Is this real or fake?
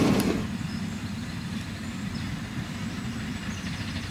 real